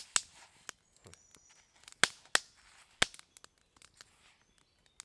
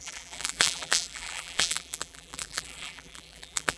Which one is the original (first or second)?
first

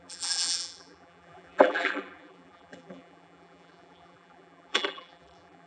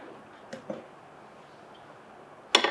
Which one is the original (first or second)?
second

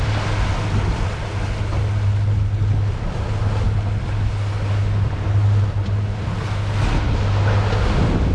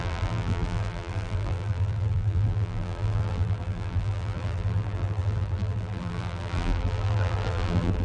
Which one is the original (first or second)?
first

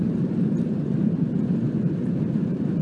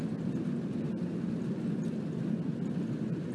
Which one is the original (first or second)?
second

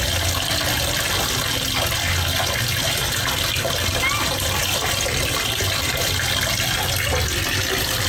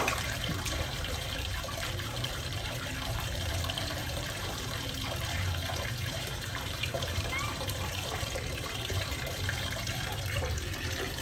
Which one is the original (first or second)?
first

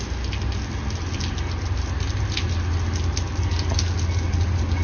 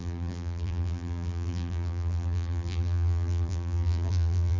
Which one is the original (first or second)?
first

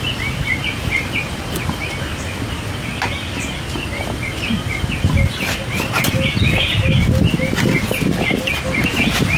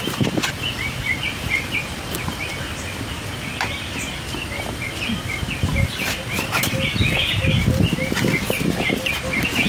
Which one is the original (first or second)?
first